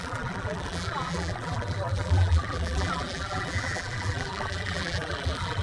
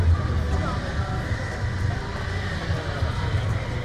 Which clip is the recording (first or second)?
second